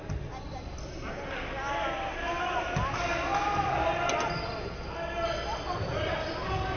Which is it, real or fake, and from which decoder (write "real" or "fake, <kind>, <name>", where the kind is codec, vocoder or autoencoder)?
real